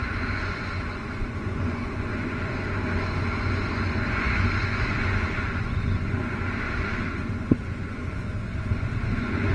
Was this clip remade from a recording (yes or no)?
yes